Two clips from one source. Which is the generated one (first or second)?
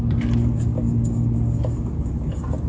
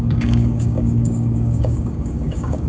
second